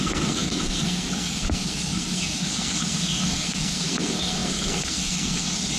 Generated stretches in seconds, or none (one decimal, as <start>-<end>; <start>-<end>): 0.0-5.8